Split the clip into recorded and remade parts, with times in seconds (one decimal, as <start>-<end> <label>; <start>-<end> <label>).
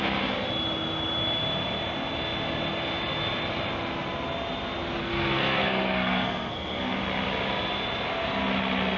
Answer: 0.0-5.0 recorded; 5.0-7.0 remade; 7.0-9.0 recorded